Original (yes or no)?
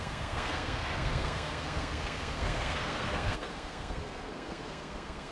no